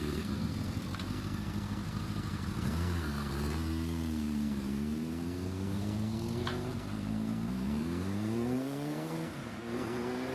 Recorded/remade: remade